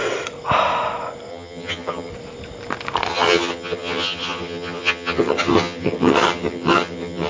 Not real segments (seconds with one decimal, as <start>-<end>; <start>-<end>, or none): 1.3-2.1; 3.1-7.3